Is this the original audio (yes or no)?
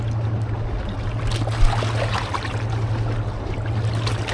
yes